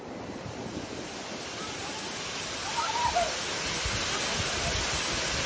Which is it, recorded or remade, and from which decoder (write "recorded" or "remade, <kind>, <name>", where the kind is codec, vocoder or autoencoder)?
recorded